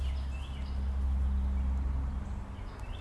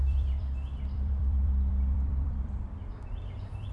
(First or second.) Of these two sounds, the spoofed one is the second